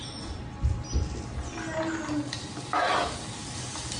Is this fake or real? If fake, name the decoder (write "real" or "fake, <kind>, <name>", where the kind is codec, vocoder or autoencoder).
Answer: real